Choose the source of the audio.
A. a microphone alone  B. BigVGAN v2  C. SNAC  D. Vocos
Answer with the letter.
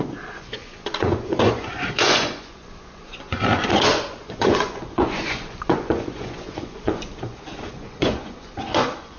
D